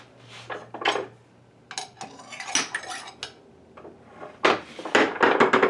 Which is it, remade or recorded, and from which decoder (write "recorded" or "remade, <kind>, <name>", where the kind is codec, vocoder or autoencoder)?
recorded